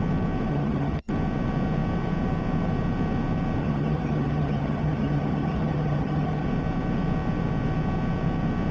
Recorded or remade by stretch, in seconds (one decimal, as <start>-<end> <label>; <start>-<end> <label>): 0.0-0.5 recorded; 0.5-1.1 remade; 1.1-3.6 recorded; 3.6-6.5 remade; 6.5-8.7 recorded

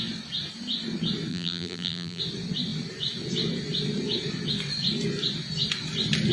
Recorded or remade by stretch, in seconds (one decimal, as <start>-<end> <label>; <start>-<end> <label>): 0.0-1.3 recorded; 1.3-2.2 remade; 2.2-6.3 recorded

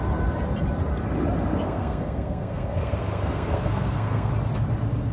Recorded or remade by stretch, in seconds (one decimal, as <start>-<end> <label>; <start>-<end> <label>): 0.0-1.5 recorded; 1.5-4.3 remade; 4.3-5.1 recorded

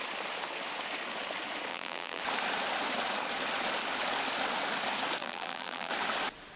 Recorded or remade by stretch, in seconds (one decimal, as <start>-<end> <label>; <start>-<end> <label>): 0.0-1.7 recorded; 1.7-2.2 remade; 2.2-5.2 recorded; 5.2-5.9 remade; 5.9-6.6 recorded

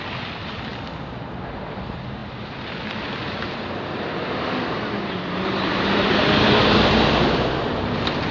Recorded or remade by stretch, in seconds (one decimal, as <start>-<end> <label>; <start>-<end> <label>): 0.0-0.7 remade; 0.7-1.8 recorded; 1.8-8.3 remade

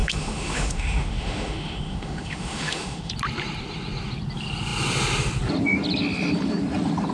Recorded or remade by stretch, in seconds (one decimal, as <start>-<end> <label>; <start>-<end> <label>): 0.0-3.1 remade; 3.1-7.1 recorded

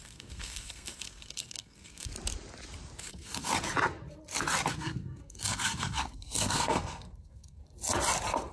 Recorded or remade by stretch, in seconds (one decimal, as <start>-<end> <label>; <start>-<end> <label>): 0.0-2.1 remade; 2.1-3.0 recorded; 3.0-3.5 remade; 3.5-4.7 recorded; 4.7-7.6 remade; 7.6-8.5 recorded

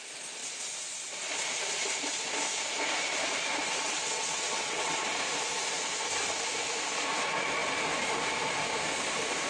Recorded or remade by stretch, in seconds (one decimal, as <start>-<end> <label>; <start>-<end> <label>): 0.0-3.6 recorded; 3.6-5.0 remade; 5.0-9.5 recorded